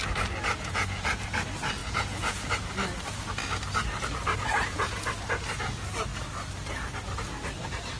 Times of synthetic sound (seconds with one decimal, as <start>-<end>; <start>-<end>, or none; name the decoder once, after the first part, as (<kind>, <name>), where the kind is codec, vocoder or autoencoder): 0.5-1.2 (vocoder, Vocos); 1.8-2.5; 4.5-5.1